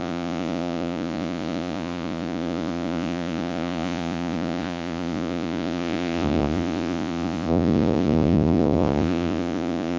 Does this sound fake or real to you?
fake